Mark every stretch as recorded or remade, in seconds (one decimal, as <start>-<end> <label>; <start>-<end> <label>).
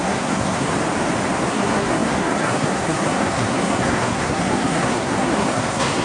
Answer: 0.0-0.7 remade; 0.7-1.5 recorded; 1.5-6.0 remade